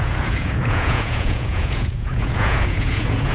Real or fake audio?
fake